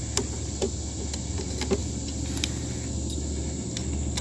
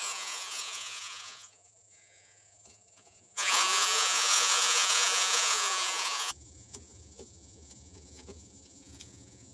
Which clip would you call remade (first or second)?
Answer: second